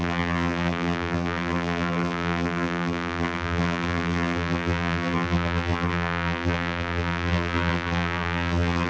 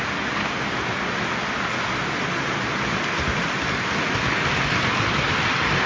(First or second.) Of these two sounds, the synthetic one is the first